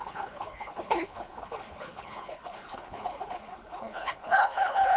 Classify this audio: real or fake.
fake